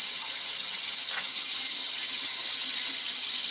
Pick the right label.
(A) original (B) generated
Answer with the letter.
B